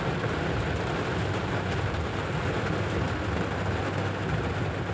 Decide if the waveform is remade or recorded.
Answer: recorded